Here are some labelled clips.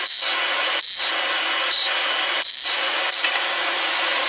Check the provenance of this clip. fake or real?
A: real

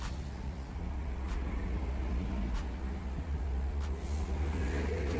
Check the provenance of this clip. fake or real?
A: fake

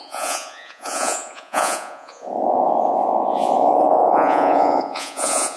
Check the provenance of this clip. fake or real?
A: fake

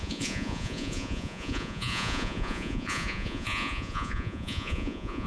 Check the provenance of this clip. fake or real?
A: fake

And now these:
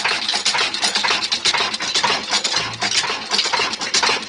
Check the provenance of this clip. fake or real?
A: real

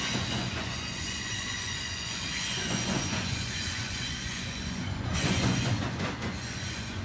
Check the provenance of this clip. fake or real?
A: fake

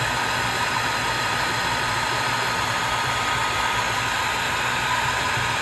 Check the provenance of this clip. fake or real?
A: real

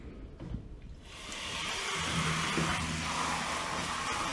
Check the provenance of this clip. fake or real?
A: real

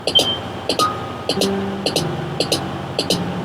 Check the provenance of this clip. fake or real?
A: real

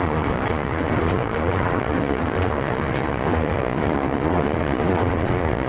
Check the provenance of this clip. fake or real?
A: fake